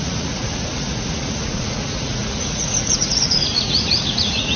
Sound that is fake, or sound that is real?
fake